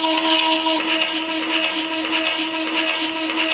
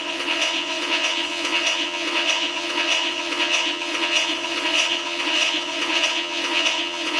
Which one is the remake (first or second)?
second